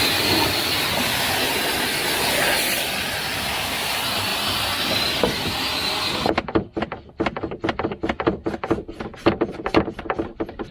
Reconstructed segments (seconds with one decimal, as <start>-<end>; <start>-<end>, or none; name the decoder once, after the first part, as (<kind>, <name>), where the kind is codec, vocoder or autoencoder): 0.0-4.3 (vocoder, BigVGAN v2); 5.2-10.7